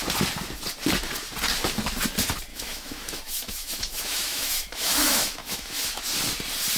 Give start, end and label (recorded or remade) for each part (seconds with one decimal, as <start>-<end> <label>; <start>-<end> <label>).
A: 0.0-2.5 recorded; 2.5-6.0 remade; 6.0-6.8 recorded